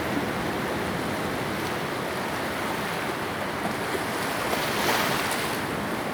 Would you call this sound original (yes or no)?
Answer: yes